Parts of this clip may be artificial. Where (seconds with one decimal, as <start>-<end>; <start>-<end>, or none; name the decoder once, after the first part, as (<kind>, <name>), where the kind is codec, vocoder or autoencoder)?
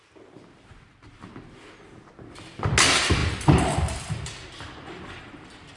none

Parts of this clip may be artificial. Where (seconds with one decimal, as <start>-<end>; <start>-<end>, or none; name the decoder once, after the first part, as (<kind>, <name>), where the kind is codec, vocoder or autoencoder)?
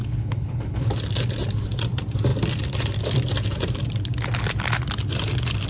0.0-0.9 (codec, HILCodec)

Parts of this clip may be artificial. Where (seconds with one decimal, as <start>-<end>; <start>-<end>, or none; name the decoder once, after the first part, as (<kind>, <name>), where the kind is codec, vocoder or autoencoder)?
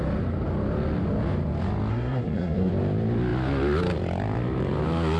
1.9-2.7 (codec, SNAC)